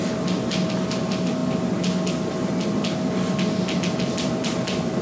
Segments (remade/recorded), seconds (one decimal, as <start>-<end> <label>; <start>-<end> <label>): 0.0-5.0 recorded